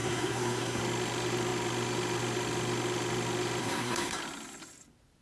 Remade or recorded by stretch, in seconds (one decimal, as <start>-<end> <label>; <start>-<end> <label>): 0.0-0.8 remade; 0.8-3.6 recorded; 3.6-4.2 remade; 4.2-5.2 recorded